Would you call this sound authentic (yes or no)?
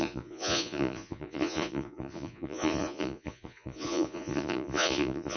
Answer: no